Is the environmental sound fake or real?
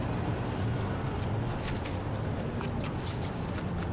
real